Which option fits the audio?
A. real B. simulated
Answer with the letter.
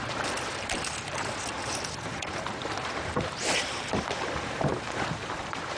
B